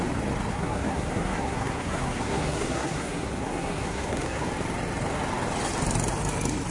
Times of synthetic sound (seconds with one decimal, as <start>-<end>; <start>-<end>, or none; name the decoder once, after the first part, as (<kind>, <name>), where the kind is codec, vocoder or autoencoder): 0.5-4.5 (codec, SNAC)